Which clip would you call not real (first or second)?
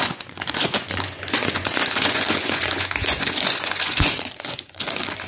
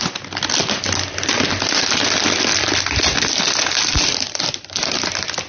first